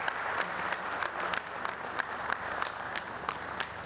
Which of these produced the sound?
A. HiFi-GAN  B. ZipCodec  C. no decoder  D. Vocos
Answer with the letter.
C